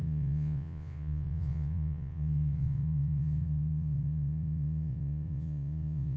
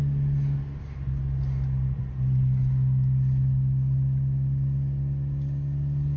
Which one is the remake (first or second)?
first